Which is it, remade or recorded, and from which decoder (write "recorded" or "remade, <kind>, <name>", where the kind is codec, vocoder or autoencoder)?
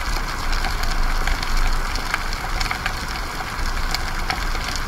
recorded